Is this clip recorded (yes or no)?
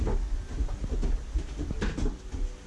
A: yes